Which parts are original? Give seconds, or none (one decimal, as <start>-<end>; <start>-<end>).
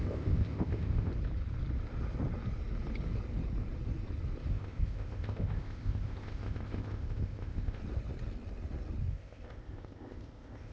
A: 1.1-4.5; 7.8-9.1